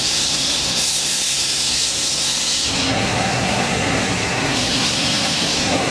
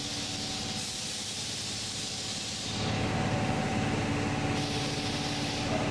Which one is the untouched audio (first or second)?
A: second